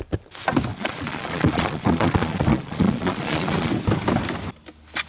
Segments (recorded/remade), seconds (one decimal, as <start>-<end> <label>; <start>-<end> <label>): 0.0-0.7 recorded; 0.7-3.7 remade; 3.7-5.1 recorded